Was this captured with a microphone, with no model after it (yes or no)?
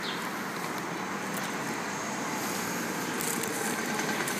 yes